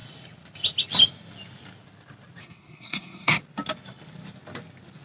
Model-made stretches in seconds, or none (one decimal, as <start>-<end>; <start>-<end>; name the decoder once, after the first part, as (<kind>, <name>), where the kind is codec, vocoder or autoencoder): 2.4-3.4 (codec, SNAC)